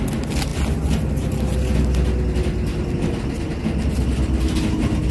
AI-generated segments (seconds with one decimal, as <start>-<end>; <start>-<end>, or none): none